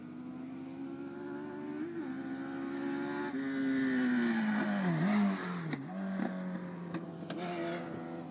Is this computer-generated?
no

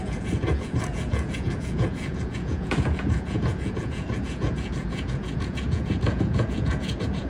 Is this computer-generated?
yes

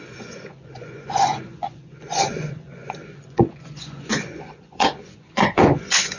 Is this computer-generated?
yes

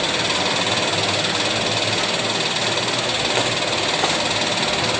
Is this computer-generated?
no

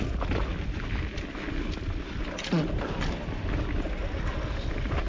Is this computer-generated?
no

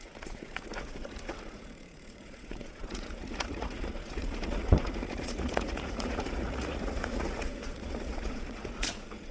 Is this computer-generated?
yes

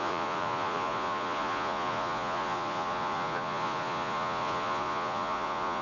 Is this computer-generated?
yes